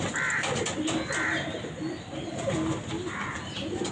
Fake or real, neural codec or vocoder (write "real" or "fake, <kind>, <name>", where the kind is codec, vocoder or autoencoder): real